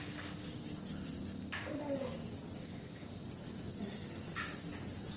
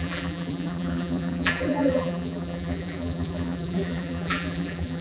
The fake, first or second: second